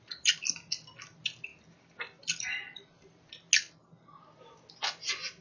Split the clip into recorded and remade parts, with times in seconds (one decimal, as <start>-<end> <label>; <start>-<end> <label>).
0.0-5.4 recorded